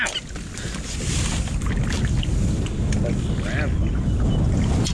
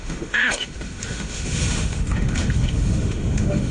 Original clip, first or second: first